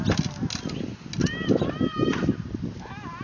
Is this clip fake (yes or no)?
no